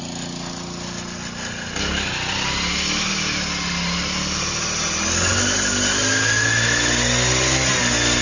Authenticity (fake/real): real